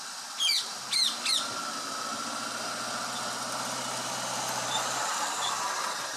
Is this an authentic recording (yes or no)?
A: yes